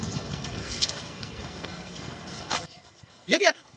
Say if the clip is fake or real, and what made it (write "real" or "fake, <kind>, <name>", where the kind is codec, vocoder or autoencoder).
fake, codec, SNAC